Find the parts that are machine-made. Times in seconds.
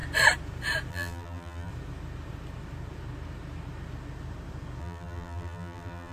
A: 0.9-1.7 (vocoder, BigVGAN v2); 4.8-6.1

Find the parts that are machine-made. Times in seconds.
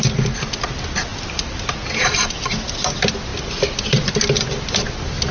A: none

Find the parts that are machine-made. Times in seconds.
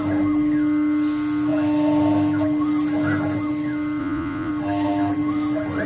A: 4.0-4.5 (vocoder, Vocos)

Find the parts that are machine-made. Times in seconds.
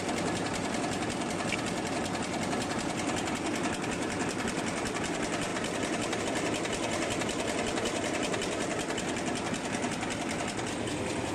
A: 0.0-11.3 (vocoder, BigVGAN v2)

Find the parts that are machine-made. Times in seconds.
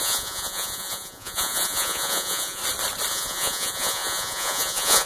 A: 0.0-2.6 (vocoder, Vocos); 3.1-5.1